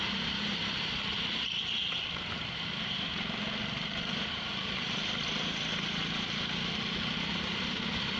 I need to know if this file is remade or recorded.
recorded